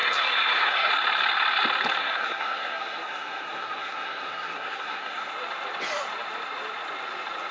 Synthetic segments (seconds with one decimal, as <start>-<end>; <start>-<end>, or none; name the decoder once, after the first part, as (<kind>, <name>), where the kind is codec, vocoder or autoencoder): 0.0-0.9 (codec, SNAC); 2.0-5.3